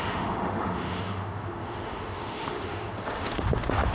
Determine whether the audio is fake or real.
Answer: fake